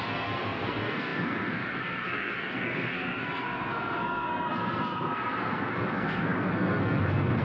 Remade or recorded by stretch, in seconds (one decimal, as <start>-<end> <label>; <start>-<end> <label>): 0.0-7.4 remade

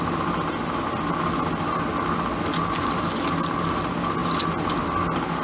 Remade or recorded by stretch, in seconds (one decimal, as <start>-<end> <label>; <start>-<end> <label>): 0.0-5.4 recorded

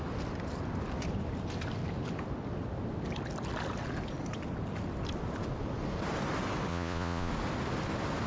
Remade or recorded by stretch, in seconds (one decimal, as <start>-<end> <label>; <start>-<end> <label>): 0.0-6.7 recorded; 6.7-7.3 remade; 7.3-8.3 recorded

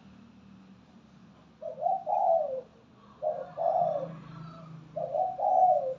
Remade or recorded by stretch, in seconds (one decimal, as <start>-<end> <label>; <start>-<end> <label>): 0.0-6.0 recorded

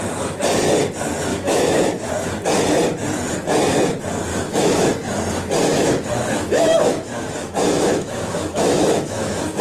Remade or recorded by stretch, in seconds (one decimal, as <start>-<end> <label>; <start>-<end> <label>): 0.0-1.3 recorded; 1.3-2.1 remade; 2.1-4.3 recorded; 4.3-4.9 remade; 4.9-5.7 recorded; 5.7-9.6 remade